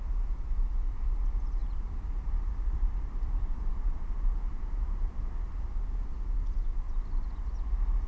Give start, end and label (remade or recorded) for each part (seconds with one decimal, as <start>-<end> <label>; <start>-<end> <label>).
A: 0.0-1.6 recorded; 1.6-5.8 remade; 5.8-8.1 recorded